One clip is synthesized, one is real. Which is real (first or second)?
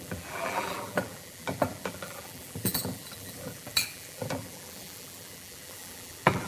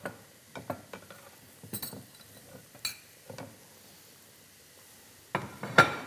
second